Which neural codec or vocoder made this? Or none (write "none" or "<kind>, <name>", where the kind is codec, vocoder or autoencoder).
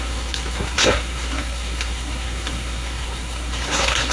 codec, SNAC